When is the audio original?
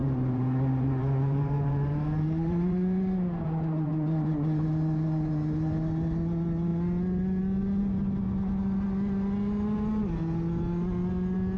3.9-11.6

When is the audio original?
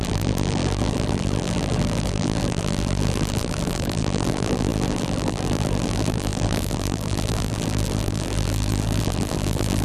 none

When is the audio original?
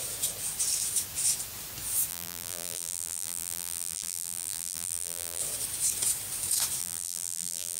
0.0-2.1; 5.4-6.8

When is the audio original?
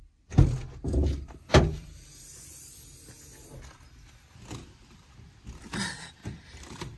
0.0-1.0; 2.7-6.2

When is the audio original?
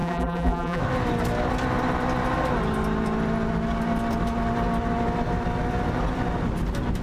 0.8-7.0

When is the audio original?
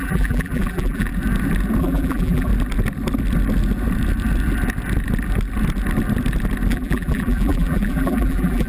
1.1-1.8; 2.5-6.7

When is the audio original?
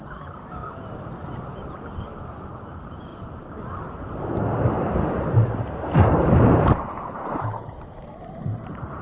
0.6-1.2; 3.1-5.3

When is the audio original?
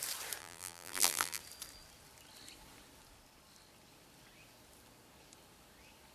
0.0-0.4; 1.4-6.1